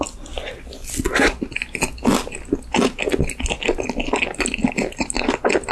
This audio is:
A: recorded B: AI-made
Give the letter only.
A